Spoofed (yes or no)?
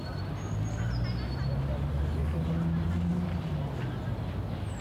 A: no